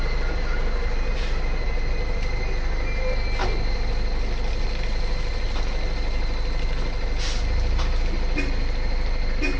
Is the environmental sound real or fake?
real